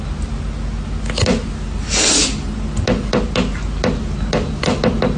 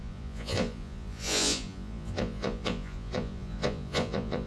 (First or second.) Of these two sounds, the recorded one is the first